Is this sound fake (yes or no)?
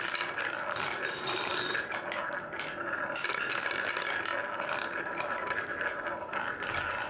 no